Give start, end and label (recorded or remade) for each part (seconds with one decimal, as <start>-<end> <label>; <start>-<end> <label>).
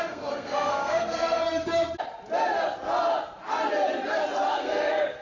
0.0-1.4 remade; 1.4-4.5 recorded; 4.5-5.2 remade